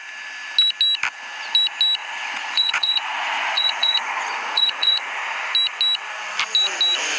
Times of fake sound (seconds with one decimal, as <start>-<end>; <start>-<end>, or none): 2.0-5.2